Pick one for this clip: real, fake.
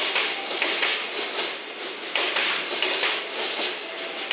real